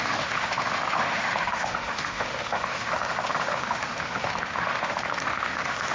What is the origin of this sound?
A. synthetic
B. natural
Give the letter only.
A